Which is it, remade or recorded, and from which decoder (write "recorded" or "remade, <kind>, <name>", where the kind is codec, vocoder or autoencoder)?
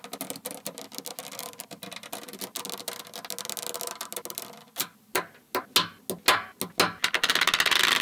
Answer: recorded